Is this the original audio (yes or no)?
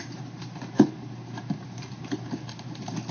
no